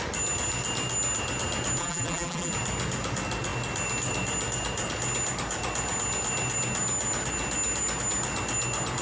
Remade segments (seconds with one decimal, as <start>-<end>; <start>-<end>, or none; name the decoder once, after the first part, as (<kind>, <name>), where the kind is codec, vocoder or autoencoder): 1.8-2.5 (vocoder, BigVGAN v2)